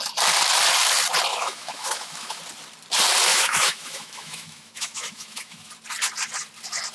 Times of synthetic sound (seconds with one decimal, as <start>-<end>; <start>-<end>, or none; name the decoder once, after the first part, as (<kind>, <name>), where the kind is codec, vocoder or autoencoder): 1.3-2.4 (autoencoder, DAC-VAE); 3.3-5.7